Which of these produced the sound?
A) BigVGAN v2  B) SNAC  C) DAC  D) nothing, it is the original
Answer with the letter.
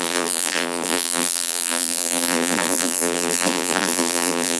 A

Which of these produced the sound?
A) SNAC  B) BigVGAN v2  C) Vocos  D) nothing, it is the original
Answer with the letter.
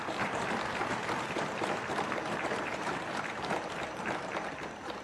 B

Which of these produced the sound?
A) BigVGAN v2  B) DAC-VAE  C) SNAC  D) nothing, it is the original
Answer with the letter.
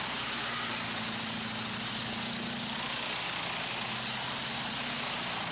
D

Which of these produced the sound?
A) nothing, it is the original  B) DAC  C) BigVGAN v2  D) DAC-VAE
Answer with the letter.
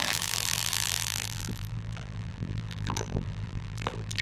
C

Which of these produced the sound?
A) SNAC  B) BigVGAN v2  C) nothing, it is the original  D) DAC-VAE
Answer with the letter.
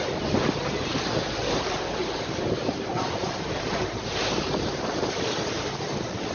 B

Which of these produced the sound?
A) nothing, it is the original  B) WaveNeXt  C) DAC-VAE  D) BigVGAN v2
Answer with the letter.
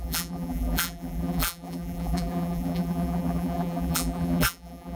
D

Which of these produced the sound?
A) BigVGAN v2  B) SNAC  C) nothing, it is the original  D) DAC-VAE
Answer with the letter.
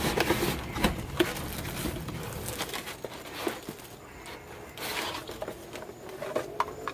C